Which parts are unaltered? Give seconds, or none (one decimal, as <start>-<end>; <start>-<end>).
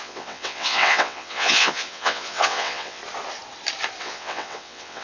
3.0-4.0